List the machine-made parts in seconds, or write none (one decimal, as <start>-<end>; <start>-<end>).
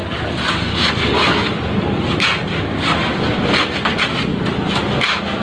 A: 4.3-4.9